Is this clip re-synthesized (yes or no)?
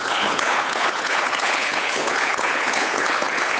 yes